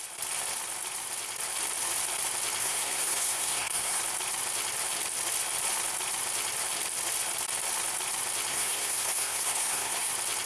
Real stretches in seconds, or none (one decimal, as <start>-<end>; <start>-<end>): 0.0-2.6; 4.0-8.5; 10.1-10.5